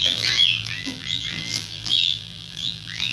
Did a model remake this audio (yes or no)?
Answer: yes